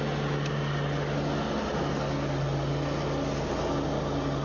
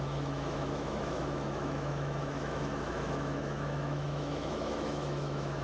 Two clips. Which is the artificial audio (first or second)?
second